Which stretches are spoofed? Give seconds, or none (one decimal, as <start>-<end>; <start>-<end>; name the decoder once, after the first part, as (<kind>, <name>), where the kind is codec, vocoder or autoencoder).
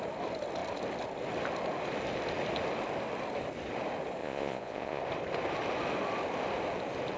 4.2-5.0 (vocoder, Vocos)